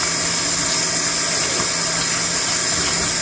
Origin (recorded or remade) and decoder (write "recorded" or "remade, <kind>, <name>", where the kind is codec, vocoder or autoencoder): recorded